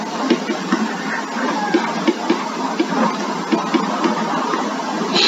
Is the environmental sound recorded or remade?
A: recorded